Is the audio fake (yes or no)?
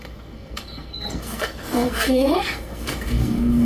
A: yes